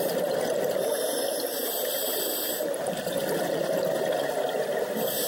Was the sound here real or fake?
real